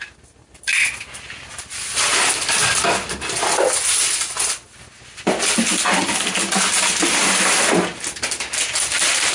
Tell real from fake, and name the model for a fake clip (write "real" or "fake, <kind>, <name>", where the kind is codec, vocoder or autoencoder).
real